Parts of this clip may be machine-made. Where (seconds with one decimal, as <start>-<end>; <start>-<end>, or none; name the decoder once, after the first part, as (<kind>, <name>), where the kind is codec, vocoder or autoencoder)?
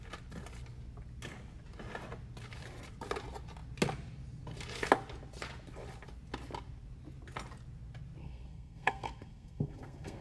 8.2-10.2 (codec, SNAC)